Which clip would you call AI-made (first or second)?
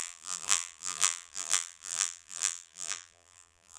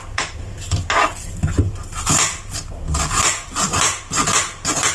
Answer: first